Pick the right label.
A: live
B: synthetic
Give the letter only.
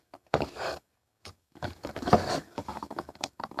B